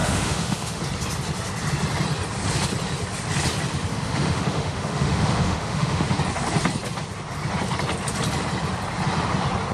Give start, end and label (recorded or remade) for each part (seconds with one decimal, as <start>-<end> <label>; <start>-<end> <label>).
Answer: 0.0-0.8 remade; 0.8-3.9 recorded; 3.9-6.2 remade; 6.2-9.7 recorded